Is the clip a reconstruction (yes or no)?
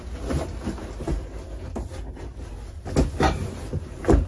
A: no